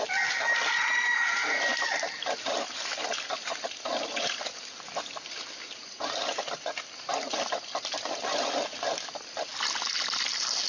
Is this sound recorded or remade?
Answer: recorded